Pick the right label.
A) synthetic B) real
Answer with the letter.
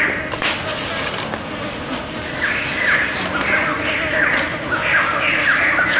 B